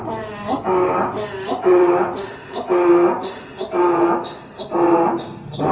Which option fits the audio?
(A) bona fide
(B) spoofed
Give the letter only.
A